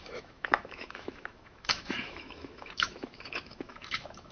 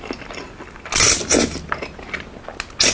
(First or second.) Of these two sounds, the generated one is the first